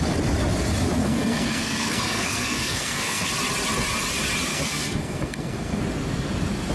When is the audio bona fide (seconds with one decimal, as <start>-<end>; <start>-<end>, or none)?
0.0-1.0; 3.3-4.5; 5.8-6.7